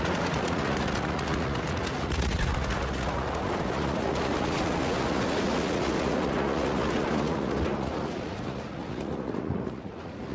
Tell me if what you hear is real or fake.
fake